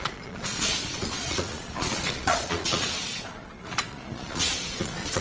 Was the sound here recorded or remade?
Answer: remade